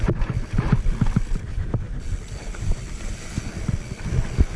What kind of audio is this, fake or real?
real